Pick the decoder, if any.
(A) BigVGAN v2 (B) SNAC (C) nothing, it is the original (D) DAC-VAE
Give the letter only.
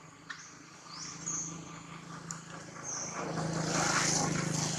C